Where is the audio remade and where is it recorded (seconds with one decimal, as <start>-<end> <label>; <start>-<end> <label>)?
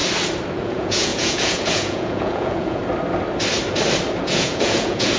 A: 0.0-0.6 recorded; 0.6-2.8 remade; 2.8-4.2 recorded; 4.2-5.2 remade